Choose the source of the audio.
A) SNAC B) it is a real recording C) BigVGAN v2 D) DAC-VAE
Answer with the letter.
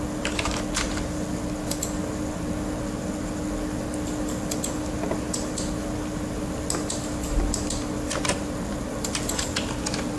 B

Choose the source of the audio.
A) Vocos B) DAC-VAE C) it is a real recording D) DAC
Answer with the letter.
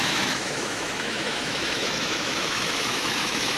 B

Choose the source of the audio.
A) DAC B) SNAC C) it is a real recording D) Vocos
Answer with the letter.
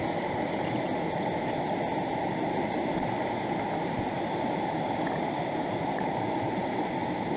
C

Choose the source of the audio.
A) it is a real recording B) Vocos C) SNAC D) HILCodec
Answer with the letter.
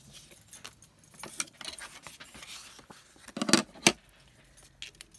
A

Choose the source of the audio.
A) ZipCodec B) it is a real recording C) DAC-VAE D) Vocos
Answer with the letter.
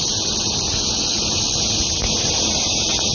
B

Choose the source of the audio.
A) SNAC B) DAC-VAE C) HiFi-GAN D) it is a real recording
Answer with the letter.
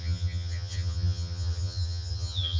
C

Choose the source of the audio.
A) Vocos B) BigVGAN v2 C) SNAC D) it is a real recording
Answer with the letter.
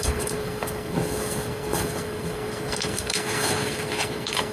C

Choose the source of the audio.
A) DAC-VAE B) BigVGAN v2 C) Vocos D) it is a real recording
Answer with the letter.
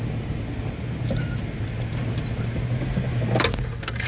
D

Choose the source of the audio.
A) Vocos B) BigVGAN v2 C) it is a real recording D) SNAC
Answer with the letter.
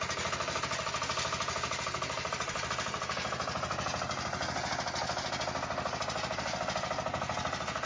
C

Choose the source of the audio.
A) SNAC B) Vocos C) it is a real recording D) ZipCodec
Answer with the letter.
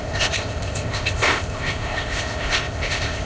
D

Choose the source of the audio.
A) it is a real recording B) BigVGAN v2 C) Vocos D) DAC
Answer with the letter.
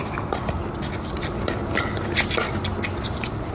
A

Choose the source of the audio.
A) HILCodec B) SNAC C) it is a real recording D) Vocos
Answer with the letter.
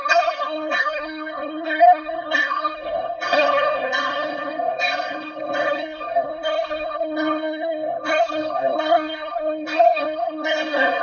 B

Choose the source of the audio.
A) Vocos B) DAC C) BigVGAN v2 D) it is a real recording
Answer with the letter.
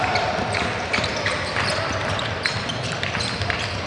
C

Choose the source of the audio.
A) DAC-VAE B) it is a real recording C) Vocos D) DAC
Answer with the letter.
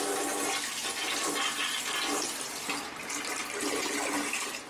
B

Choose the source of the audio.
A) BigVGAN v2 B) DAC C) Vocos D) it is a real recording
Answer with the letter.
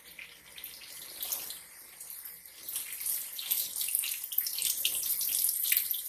D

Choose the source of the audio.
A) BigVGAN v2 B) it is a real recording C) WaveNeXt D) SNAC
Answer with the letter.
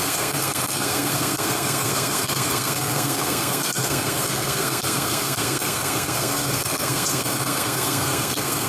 D